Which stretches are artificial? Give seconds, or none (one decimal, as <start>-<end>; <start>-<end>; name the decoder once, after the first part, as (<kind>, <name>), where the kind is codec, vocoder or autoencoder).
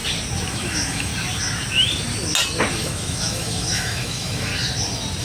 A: 0.5-1.1 (autoencoder, DAC-VAE); 2.7-4.5